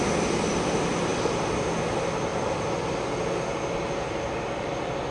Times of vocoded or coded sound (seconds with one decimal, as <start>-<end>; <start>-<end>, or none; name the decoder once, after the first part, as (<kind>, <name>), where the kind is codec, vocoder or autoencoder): none